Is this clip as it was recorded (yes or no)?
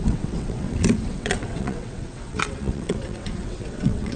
no